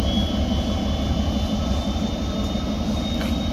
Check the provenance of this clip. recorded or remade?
recorded